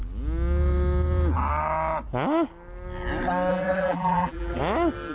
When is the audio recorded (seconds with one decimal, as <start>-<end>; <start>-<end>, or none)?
0.0-3.5; 4.6-5.1